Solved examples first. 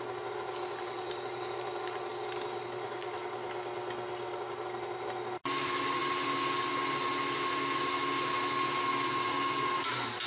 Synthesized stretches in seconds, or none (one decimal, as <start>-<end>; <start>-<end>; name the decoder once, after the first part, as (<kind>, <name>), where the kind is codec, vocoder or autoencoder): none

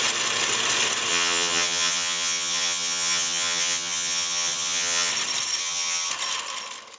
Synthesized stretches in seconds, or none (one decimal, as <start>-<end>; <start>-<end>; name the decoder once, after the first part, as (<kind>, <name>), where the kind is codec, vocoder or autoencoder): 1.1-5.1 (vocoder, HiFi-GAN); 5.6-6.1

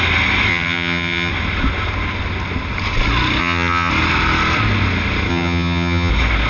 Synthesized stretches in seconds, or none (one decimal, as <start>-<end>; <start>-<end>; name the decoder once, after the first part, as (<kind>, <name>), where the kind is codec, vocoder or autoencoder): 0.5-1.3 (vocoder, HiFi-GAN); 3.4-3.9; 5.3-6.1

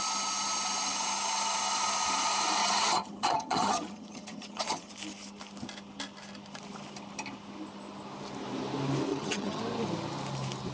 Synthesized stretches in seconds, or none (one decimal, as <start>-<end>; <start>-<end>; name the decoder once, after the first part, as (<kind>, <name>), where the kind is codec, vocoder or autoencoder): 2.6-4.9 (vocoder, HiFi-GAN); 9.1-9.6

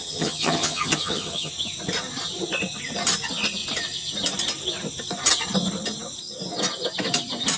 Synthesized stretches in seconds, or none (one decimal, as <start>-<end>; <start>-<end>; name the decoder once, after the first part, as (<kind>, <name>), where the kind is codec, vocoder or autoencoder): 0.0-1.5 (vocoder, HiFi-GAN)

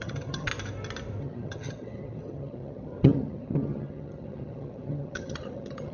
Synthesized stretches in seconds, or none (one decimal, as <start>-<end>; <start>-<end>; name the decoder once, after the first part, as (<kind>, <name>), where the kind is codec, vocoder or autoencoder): 0.0-0.5 (vocoder, HiFi-GAN); 1.2-5.9